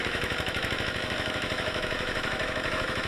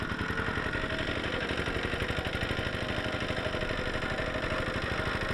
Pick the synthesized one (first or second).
first